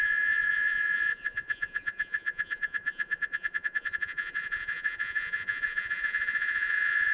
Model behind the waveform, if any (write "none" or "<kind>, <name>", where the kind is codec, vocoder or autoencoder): vocoder, Vocos